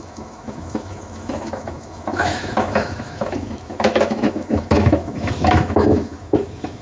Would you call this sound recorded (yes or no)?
no